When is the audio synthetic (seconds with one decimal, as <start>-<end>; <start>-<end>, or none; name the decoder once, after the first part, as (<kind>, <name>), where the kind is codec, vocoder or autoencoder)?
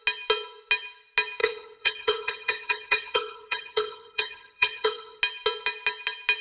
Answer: 1.4-5.2 (codec, HILCodec)